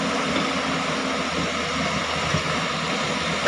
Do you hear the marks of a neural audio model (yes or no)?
no